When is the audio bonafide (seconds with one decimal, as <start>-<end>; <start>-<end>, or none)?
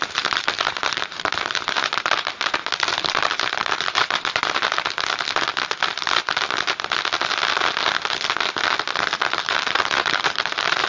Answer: 4.6-9.2